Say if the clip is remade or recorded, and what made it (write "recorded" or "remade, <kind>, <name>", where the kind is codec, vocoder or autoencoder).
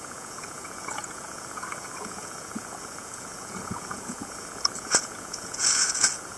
remade, vocoder, Vocos